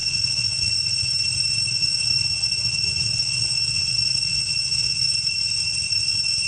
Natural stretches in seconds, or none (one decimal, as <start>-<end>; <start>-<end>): 0.7-1.7; 5.1-6.5